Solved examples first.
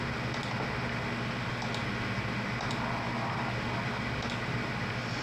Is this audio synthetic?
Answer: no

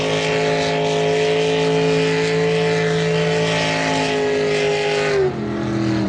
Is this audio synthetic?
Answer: no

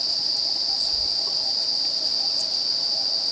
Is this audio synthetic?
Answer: no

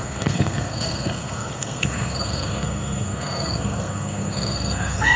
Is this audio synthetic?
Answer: yes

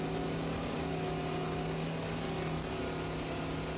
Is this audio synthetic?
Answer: no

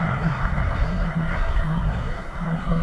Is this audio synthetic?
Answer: yes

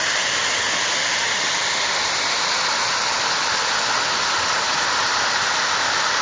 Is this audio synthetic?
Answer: no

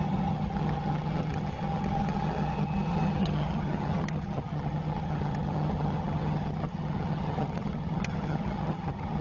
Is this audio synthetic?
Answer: yes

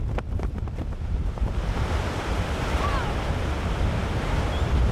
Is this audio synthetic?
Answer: yes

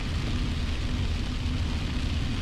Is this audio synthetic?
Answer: no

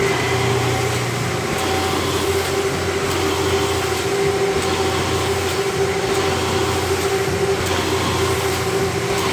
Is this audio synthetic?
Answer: no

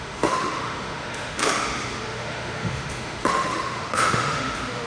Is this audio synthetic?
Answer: yes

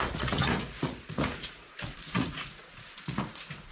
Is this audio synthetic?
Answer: yes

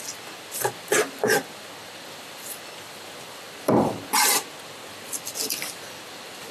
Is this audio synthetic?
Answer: no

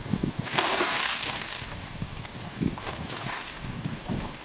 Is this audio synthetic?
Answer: yes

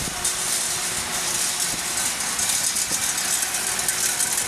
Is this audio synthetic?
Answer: no